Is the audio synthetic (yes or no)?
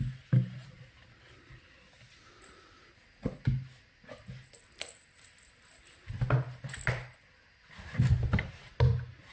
no